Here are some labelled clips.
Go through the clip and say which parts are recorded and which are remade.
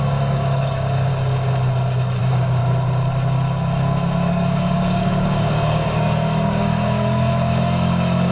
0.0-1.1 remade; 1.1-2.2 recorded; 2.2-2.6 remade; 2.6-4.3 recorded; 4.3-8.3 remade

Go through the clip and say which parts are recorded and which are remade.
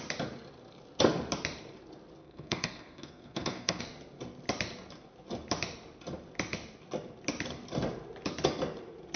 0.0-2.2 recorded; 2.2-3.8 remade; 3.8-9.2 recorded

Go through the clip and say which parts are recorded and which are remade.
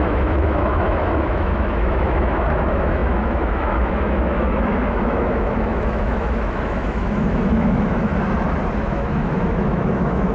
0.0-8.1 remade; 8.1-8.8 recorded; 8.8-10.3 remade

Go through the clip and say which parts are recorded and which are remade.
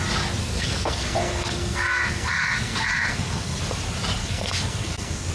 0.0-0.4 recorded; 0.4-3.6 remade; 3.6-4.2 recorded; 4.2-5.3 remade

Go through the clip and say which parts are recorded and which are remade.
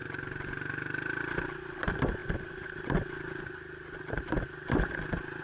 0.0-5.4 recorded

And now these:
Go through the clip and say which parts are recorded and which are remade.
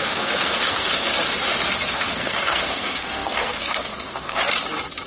0.0-1.1 remade; 1.1-1.9 recorded; 1.9-4.4 remade; 4.4-5.1 recorded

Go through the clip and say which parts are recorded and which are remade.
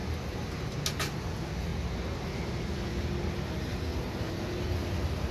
0.0-5.3 recorded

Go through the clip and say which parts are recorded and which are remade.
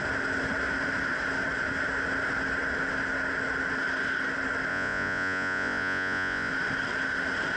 0.0-4.7 recorded; 4.7-6.5 remade; 6.5-7.6 recorded